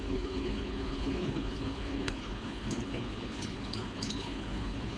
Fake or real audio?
fake